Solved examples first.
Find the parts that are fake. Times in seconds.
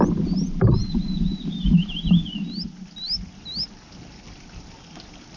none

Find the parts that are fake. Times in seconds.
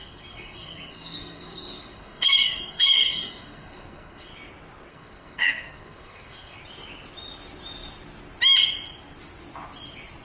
0.0-4.3 (codec, SNAC); 4.9-6.6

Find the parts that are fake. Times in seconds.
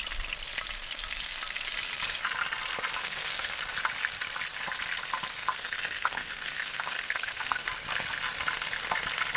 3.0-3.5 (codec, SNAC); 5.4-7.7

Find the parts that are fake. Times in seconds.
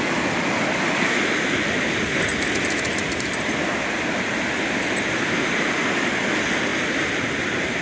none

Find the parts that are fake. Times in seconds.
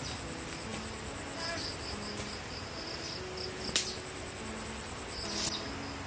none